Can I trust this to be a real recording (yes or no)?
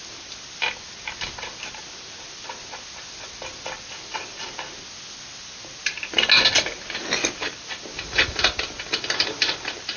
yes